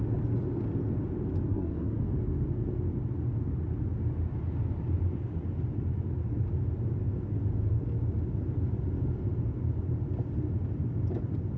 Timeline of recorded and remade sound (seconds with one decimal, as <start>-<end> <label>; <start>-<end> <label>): 0.0-1.5 recorded; 1.5-2.0 remade; 2.0-11.6 recorded